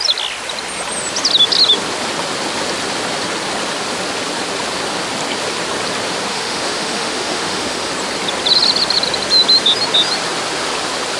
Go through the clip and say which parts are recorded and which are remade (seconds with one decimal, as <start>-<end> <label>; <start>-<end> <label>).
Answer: 0.0-6.3 recorded; 6.3-7.9 remade; 7.9-11.2 recorded